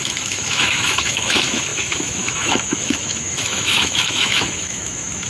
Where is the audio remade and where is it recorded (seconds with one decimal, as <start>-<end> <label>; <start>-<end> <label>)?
0.0-5.3 remade